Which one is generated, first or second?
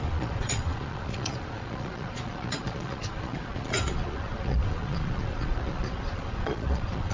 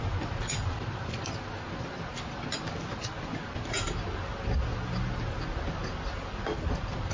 first